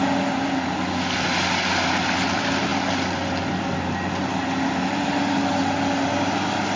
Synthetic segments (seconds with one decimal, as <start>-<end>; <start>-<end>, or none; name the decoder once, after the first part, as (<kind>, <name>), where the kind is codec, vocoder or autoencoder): none